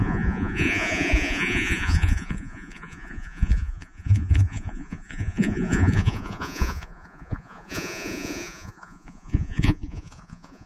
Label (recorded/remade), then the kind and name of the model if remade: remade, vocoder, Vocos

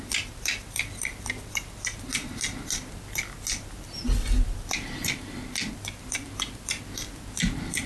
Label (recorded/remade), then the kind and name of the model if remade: recorded